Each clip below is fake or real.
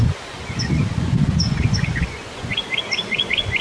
fake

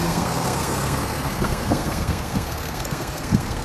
fake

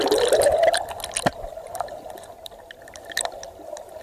real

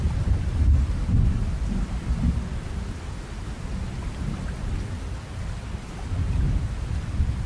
real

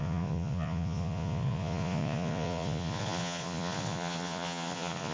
fake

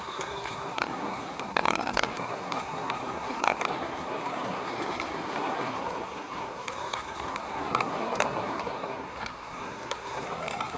fake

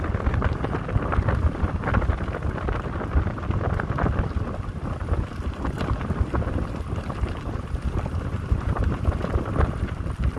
real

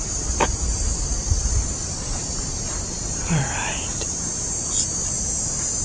fake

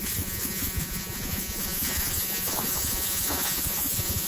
fake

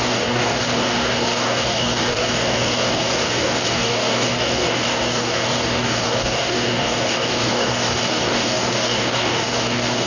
fake